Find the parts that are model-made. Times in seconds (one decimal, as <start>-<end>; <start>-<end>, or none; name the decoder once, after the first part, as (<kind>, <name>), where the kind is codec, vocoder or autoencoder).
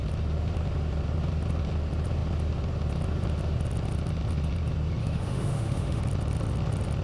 5.0-6.0 (autoencoder, DAC-VAE)